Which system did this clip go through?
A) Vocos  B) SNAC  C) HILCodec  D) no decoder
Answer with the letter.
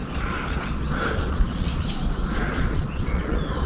A